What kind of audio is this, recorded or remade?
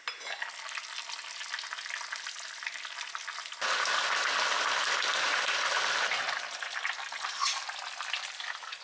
recorded